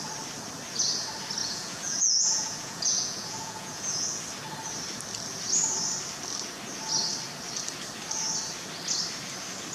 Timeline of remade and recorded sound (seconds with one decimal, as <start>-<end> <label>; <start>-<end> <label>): 0.0-1.4 recorded; 1.4-4.2 remade; 4.2-9.7 recorded